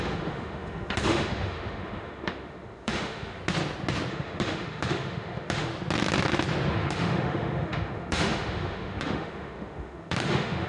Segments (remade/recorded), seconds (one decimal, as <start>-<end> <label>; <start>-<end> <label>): 0.0-3.4 remade; 3.4-4.1 recorded; 4.1-5.7 remade; 5.7-6.7 recorded; 6.7-10.7 remade